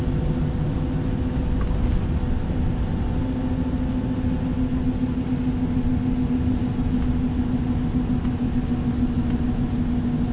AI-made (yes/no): no